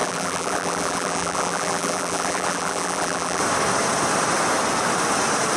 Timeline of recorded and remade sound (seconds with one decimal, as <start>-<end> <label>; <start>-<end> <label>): 0.0-3.4 remade; 3.4-5.6 recorded